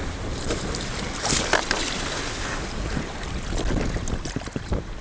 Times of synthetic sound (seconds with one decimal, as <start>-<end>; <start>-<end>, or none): none